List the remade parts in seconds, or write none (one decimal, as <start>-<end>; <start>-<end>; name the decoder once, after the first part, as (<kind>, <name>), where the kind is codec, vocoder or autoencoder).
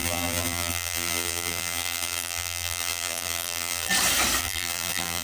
0.0-3.9 (vocoder, BigVGAN v2); 4.4-5.2